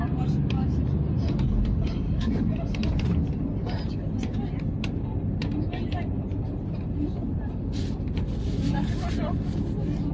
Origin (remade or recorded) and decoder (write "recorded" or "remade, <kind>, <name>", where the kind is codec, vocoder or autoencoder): recorded